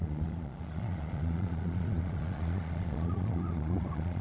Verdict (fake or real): fake